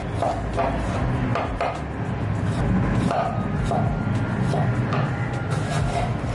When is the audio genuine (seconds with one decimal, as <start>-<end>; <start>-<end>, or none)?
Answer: 0.0-6.3